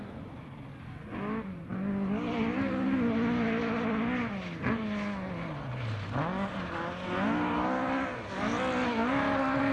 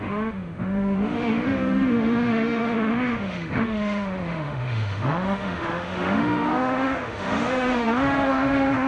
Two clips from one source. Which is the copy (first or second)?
second